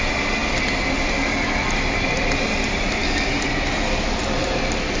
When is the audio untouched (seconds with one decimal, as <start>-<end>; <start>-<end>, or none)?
0.0-5.0